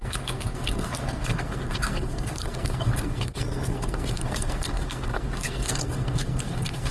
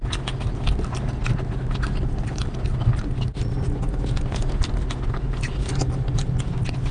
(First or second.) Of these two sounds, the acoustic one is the second